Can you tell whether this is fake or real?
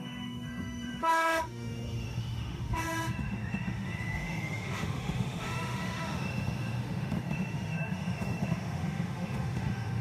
fake